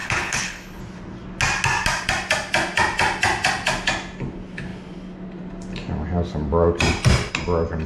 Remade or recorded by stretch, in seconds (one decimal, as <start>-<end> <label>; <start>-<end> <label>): 0.0-0.8 remade; 0.8-7.9 recorded